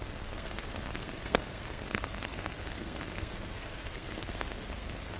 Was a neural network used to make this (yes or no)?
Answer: yes